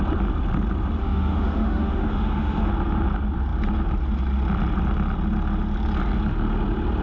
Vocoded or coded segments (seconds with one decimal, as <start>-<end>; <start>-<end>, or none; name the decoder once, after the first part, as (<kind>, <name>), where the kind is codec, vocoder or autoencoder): 1.0-2.7 (autoencoder, DAC-VAE)